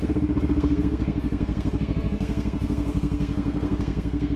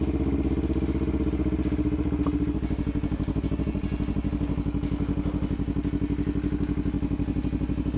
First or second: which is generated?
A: first